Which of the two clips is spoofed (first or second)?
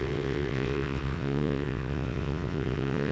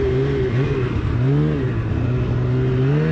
first